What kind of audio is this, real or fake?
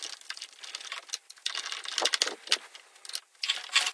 real